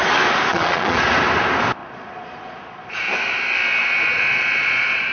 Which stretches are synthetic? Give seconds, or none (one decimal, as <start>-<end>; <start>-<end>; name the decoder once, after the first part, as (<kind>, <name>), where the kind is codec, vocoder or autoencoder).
0.5-1.0 (vocoder, Vocos); 1.8-3.0; 3.8-5.1